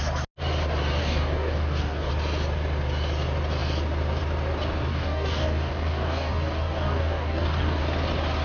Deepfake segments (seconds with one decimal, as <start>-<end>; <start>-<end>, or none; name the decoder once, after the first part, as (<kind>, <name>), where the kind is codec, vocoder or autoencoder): 1.0-2.1 (codec, DAC); 4.9-7.8